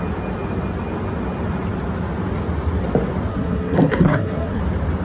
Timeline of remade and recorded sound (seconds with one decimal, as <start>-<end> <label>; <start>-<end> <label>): 0.0-3.3 recorded; 3.3-4.6 remade; 4.6-5.0 recorded